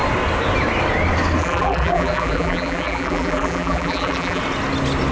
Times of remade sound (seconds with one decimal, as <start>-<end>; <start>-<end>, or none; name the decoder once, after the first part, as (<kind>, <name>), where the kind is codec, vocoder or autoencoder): 1.4-4.4 (vocoder, BigVGAN v2)